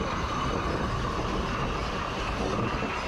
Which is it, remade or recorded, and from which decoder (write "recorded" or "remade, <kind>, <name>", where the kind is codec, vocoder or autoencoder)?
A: recorded